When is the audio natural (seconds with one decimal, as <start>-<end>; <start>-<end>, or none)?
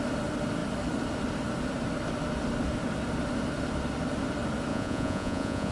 0.0-4.7